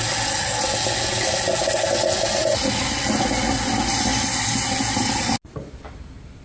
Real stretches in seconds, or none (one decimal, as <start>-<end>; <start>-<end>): 0.0-6.4